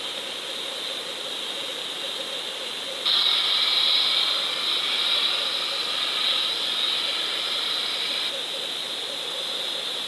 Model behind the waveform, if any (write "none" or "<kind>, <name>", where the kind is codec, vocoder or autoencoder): none